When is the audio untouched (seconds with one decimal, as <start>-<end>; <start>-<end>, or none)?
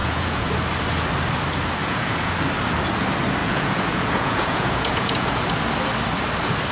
0.5-1.8; 2.3-3.4; 5.4-6.7